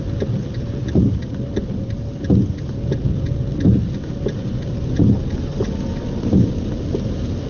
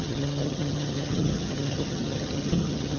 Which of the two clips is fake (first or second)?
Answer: second